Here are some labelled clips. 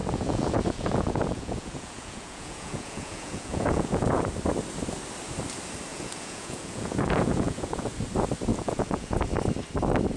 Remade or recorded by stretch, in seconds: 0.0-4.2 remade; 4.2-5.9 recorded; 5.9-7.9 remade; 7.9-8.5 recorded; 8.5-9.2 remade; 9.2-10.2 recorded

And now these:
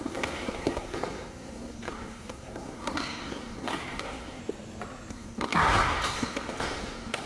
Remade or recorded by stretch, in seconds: 0.0-4.4 remade; 4.4-5.1 recorded; 5.1-7.3 remade

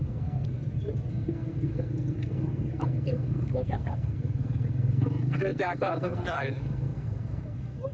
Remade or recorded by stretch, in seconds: 0.0-0.6 remade; 0.6-1.1 recorded; 1.1-7.9 remade

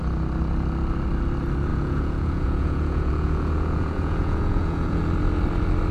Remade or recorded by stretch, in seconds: 0.0-1.7 recorded; 1.7-5.0 remade; 5.0-5.9 recorded

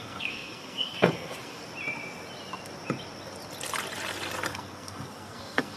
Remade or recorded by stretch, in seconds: 0.0-1.6 remade; 1.6-4.5 recorded; 4.5-5.8 remade

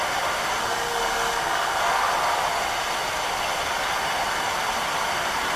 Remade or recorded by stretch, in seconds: 0.0-0.6 recorded; 0.6-1.8 remade; 1.8-5.6 recorded

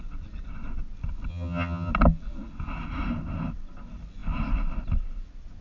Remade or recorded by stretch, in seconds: 0.0-1.3 recorded; 1.3-1.9 remade; 1.9-5.6 recorded